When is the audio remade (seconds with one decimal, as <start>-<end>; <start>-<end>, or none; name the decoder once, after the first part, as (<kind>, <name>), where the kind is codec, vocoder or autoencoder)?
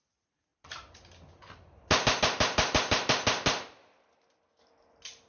none